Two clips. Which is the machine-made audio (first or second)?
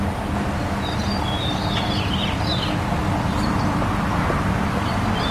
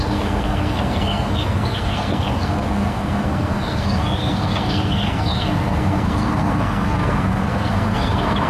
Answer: second